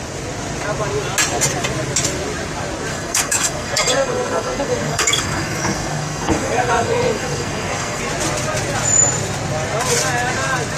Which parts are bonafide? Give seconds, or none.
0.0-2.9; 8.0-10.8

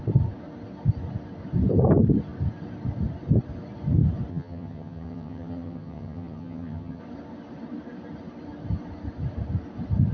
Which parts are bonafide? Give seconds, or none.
0.0-4.3; 7.0-10.1

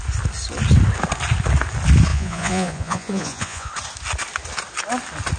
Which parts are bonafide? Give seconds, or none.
0.0-2.1; 3.7-5.4